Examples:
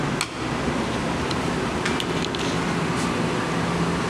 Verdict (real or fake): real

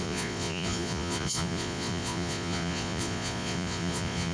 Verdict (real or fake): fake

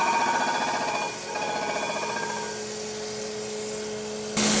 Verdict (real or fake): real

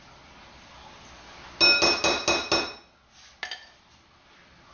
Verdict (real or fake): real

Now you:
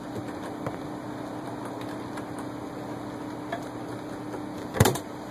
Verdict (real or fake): real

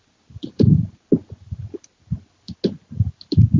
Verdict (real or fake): real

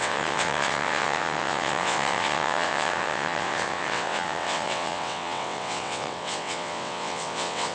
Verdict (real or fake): fake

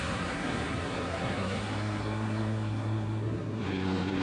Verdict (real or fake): fake